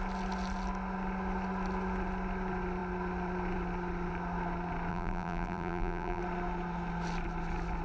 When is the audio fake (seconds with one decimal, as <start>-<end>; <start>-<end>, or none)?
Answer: 4.9-6.2